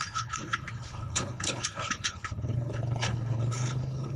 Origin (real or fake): fake